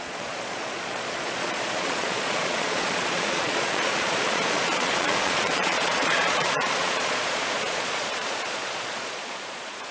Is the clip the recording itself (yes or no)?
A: no